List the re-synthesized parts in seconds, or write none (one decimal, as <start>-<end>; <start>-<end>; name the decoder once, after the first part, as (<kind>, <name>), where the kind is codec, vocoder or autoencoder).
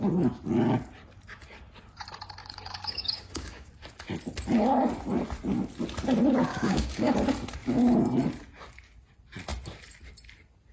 2.4-3.7 (codec, DAC); 6.5-7.1